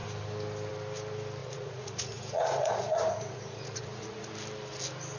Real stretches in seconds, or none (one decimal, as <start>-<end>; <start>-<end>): 0.0-1.4; 4.3-5.2